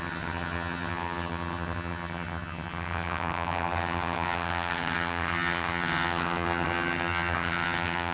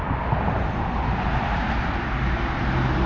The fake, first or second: first